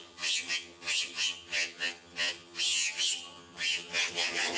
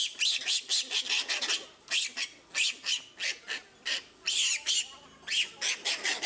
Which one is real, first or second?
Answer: second